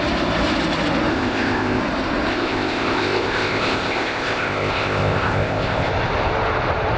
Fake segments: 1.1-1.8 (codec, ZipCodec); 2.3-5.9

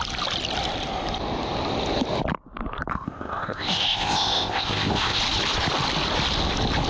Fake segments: 2.9-5.2 (codec, ZipCodec)

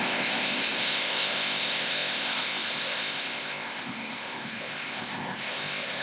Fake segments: 0.0-6.0 (codec, ZipCodec)

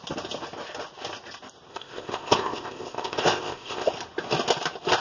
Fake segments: 1.7-3.9 (codec, ZipCodec)

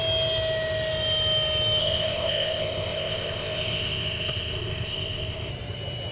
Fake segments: 1.8-5.5 (codec, ZipCodec)

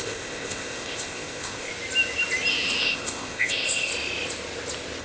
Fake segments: 0.0-1.7 (codec, ZipCodec); 2.8-3.9

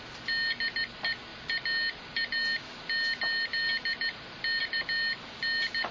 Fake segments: none

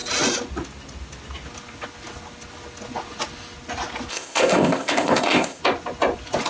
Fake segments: 4.1-5.6 (codec, ZipCodec)